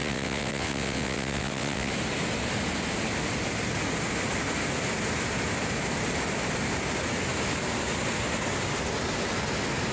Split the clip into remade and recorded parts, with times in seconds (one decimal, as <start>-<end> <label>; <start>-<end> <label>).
0.0-1.9 remade; 1.9-9.9 recorded